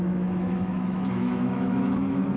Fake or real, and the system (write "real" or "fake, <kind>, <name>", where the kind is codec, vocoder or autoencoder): fake, autoencoder, DAC-VAE